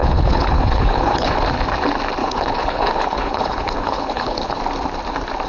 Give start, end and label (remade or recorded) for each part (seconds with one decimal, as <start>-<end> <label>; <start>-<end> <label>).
0.0-1.4 remade; 1.4-2.2 recorded; 2.2-4.6 remade; 4.6-5.5 recorded